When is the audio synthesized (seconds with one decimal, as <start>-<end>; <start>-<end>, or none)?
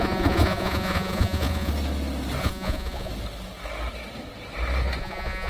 0.0-1.7; 2.4-3.1; 5.0-5.5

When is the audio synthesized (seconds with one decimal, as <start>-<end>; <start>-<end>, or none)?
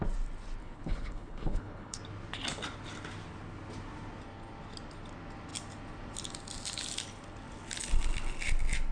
0.6-2.0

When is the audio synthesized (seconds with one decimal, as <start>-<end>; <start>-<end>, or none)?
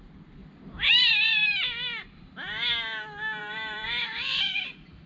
0.0-1.4; 3.4-5.1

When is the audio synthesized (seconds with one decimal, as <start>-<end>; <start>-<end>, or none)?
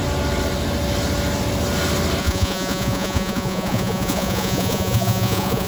2.2-5.7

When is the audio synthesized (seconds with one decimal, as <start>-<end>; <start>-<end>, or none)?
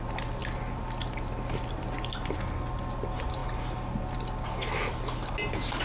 none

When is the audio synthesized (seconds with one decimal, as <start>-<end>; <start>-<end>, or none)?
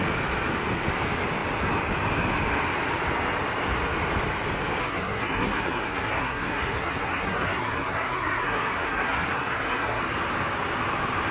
4.8-10.0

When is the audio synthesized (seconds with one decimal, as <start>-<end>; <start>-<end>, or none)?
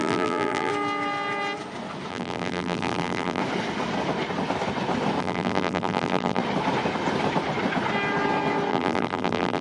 0.0-0.7; 2.1-3.4; 5.2-6.4; 8.7-9.6